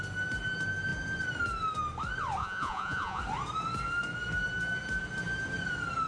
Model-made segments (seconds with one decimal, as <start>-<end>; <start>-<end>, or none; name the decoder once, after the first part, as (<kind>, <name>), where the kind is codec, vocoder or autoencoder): 2.4-3.2 (vocoder, Vocos)